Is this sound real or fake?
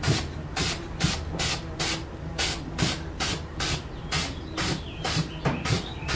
fake